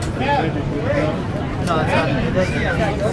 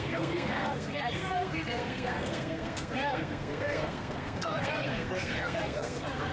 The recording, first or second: first